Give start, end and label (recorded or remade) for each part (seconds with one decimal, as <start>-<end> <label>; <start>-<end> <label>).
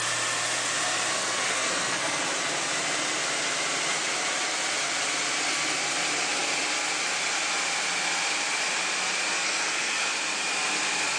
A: 0.0-1.1 recorded; 1.1-2.2 remade; 2.2-9.3 recorded; 9.3-10.1 remade; 10.1-11.2 recorded